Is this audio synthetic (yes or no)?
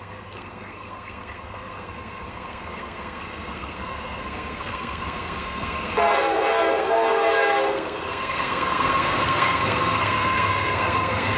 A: yes